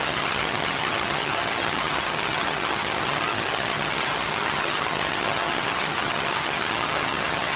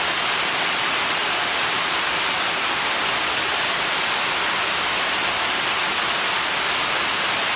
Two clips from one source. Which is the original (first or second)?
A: second